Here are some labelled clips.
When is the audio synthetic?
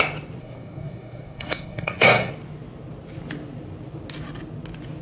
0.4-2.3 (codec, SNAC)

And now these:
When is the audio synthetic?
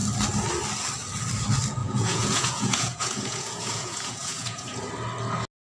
1.8-4.8 (vocoder, Vocos)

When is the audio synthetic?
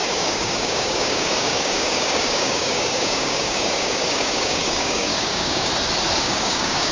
0.0-5.7 (codec, DAC); 6.2-6.9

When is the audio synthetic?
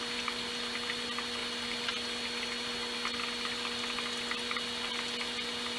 none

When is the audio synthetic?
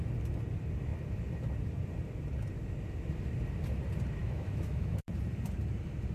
4.2-5.1 (autoencoder, DAC-VAE)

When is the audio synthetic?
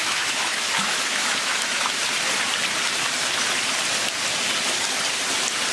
0.0-1.9 (autoencoder, DAC-VAE)